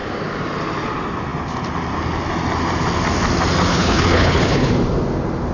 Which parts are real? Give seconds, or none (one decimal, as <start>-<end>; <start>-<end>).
0.0-3.7; 4.7-5.5